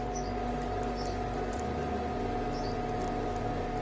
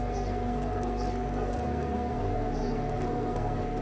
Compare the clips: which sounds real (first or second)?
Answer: first